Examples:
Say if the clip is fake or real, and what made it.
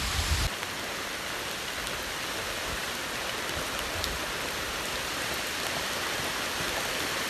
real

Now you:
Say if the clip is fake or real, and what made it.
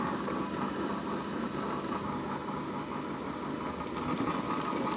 real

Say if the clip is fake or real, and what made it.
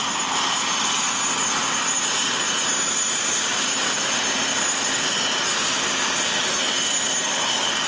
real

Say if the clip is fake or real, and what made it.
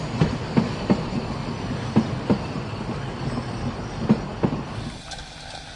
real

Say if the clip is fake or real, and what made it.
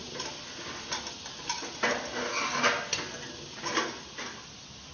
real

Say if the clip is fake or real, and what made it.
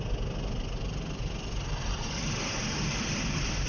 real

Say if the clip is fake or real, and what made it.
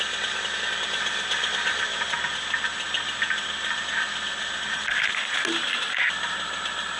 real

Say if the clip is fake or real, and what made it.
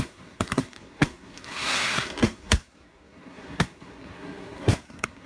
fake, codec, SNAC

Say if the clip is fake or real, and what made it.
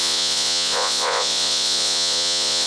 fake, vocoder, Vocos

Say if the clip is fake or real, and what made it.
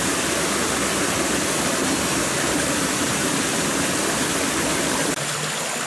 real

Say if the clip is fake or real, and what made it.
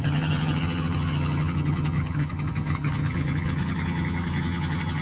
fake, vocoder, HiFi-GAN